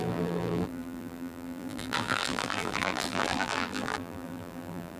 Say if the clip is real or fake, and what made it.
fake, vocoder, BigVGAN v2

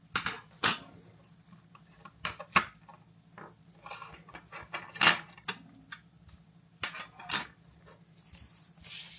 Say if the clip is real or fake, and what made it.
real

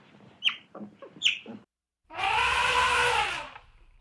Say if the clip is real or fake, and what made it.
fake, vocoder, BigVGAN v2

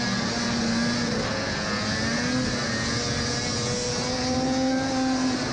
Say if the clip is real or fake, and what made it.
real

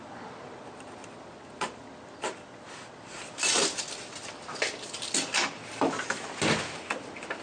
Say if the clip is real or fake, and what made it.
real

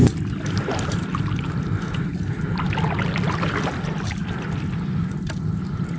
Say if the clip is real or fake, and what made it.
real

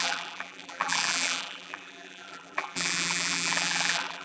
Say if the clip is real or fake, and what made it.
fake, vocoder, BigVGAN v2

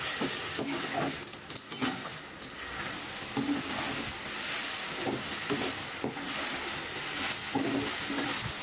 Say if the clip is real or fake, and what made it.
real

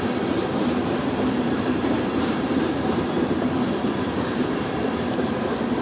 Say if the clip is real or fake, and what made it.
fake, vocoder, BigVGAN v2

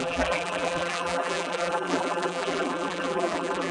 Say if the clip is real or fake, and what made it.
fake, vocoder, BigVGAN v2